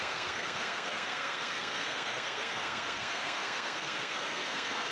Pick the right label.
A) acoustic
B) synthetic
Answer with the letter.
B